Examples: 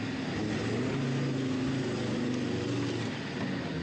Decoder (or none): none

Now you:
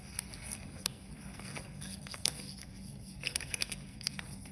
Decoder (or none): codec, SNAC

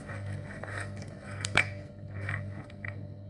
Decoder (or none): codec, SNAC